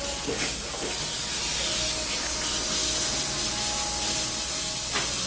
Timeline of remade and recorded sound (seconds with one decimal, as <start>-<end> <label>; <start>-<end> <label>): 0.0-5.3 recorded